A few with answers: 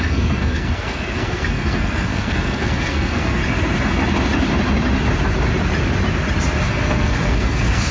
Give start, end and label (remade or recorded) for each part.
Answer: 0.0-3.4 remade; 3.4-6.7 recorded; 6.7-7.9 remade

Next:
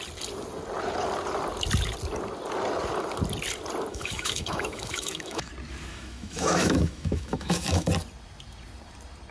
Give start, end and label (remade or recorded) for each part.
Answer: 0.0-3.9 recorded; 3.9-5.5 remade; 5.5-5.9 recorded; 5.9-7.9 remade; 7.9-9.3 recorded

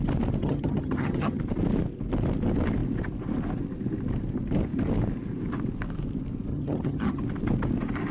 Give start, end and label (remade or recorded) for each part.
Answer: 0.0-0.4 recorded; 0.4-1.4 remade; 1.4-6.5 recorded; 6.5-7.2 remade; 7.2-8.1 recorded

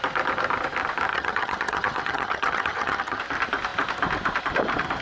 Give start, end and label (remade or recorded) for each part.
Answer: 0.0-1.1 recorded; 1.1-3.2 remade; 3.2-5.0 recorded

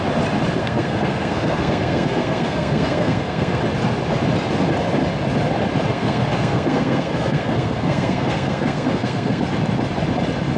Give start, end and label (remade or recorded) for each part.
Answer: 0.0-0.6 recorded; 0.6-3.6 remade; 3.6-5.9 recorded; 5.9-9.4 remade; 9.4-10.6 recorded